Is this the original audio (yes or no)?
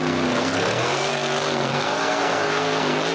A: no